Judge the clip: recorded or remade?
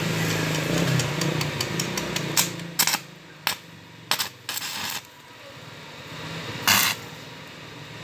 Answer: recorded